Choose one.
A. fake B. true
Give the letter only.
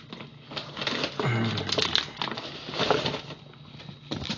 B